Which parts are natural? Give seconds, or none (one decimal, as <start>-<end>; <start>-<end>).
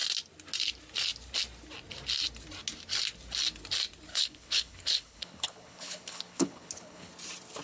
0.0-4.1; 7.1-7.6